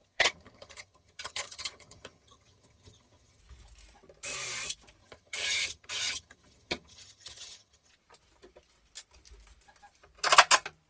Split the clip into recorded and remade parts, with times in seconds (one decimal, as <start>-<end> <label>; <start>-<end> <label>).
0.0-3.4 remade; 3.4-5.0 recorded; 5.0-7.9 remade; 7.9-10.9 recorded